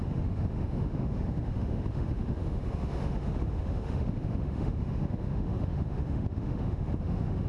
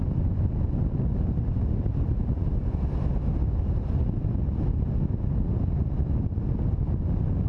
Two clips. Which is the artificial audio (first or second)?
first